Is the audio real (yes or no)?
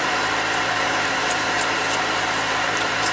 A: no